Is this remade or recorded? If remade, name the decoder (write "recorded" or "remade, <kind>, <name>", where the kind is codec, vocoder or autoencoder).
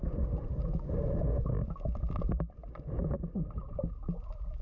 recorded